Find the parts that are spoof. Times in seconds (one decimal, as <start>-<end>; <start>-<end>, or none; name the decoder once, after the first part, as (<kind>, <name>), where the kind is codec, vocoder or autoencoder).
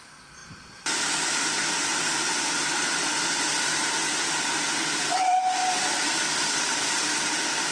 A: none